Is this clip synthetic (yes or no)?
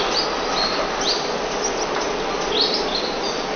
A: no